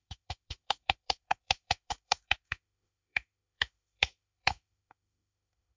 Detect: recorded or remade remade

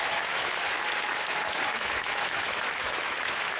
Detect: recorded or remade remade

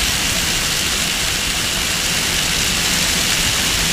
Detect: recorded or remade recorded